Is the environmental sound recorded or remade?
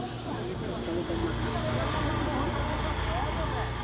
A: recorded